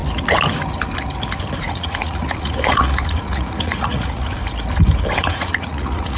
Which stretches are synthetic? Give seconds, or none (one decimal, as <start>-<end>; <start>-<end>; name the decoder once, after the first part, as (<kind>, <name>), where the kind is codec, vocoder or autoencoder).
1.6-4.4 (vocoder, Vocos); 5.3-6.2